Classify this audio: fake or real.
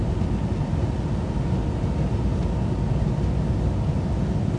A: real